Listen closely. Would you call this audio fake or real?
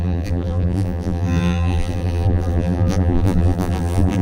fake